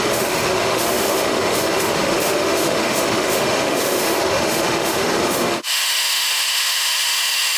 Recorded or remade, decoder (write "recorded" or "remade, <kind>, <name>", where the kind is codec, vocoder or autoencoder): remade, autoencoder, DAC-VAE